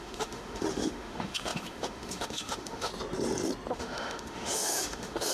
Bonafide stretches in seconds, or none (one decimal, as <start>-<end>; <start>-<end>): 2.9-3.7

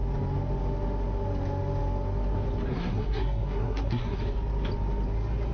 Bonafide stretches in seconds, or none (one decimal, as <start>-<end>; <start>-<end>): 0.0-2.7; 4.2-5.5

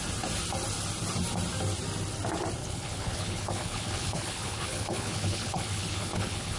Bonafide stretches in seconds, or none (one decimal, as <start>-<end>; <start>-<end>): 0.0-2.6

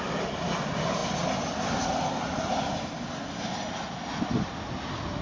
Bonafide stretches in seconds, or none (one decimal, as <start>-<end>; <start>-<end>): 0.0-5.2

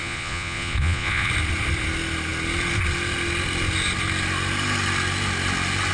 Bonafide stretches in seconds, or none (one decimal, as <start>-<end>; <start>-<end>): 1.3-5.9

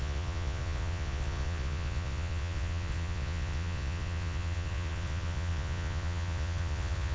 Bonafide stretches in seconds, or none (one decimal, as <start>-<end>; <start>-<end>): none